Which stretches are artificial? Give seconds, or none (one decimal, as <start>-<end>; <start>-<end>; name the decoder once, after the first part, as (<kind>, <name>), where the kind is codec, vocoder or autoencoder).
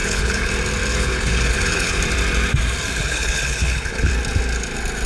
0.0-0.5 (codec, HILCodec); 0.9-2.0; 3.0-4.1